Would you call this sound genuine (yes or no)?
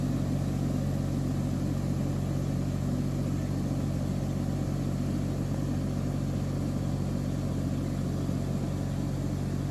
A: yes